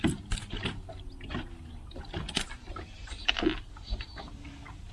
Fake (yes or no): no